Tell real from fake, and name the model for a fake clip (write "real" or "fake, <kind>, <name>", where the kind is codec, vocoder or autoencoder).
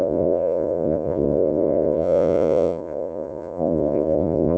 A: fake, vocoder, Vocos